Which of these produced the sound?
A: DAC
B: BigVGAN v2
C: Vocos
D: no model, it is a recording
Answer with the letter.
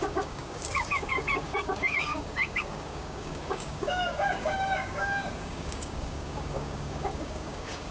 A